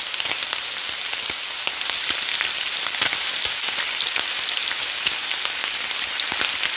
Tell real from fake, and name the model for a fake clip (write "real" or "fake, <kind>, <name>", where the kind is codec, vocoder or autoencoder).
real